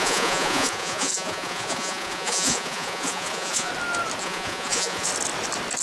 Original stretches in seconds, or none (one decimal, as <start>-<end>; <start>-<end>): 3.7-4.2; 5.1-5.8